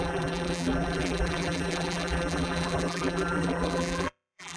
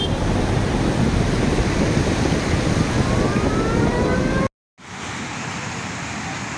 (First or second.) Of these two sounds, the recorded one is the second